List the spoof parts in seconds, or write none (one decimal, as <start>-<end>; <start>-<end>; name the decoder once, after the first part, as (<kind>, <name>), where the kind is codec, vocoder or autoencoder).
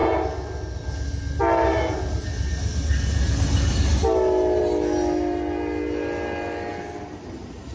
none